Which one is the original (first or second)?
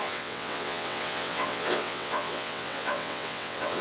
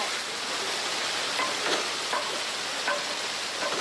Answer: second